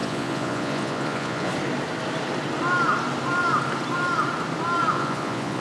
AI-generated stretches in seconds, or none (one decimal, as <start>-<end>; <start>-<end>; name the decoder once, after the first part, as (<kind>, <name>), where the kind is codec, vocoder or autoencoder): 0.0-1.5 (vocoder, Vocos); 4.9-5.6